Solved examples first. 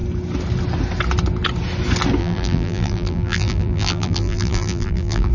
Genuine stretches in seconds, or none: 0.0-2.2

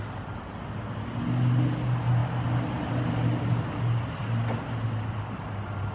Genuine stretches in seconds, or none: 0.0-5.9

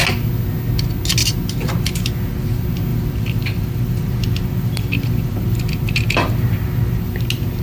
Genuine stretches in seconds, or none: 0.0-2.9; 5.5-7.6